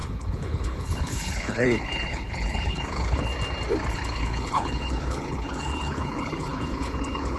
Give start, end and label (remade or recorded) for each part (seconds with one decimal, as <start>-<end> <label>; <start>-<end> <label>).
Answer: 0.0-3.3 remade; 3.3-3.9 recorded; 3.9-7.4 remade